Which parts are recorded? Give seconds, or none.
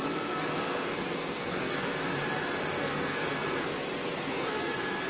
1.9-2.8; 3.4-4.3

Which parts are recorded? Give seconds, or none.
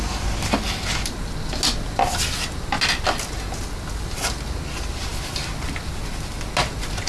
0.0-7.1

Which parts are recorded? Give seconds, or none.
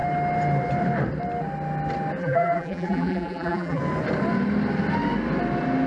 0.0-2.2; 3.8-5.9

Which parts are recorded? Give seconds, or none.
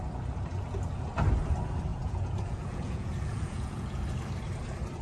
0.0-1.9; 4.0-5.0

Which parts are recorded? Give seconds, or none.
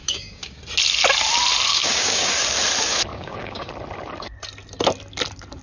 0.6-1.7; 2.3-3.1; 3.7-5.6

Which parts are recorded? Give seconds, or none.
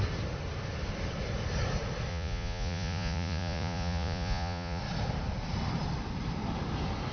0.0-2.1; 4.8-7.1